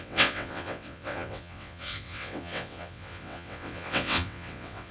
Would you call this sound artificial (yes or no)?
yes